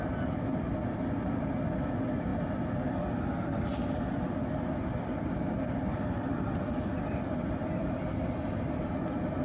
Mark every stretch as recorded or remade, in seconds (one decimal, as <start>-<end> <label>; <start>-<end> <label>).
0.0-9.4 recorded